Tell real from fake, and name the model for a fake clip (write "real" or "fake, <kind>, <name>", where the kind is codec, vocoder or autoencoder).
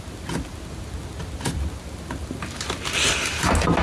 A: real